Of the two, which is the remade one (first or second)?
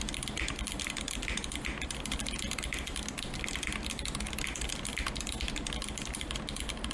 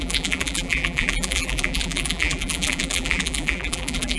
second